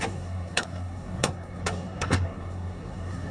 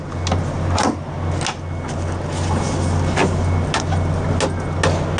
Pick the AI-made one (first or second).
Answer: first